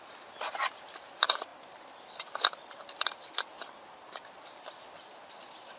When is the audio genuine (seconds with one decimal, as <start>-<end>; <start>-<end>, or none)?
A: 0.0-5.8